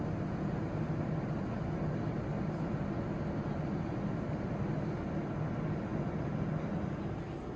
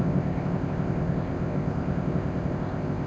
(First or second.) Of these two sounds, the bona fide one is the first